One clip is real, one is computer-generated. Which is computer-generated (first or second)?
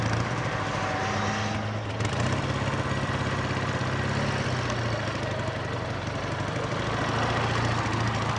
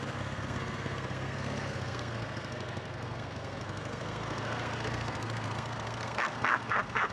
second